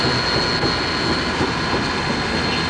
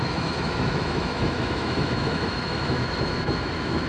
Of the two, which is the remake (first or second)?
second